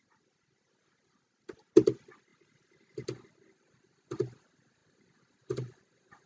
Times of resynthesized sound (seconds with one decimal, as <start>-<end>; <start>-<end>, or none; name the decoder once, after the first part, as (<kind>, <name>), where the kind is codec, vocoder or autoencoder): none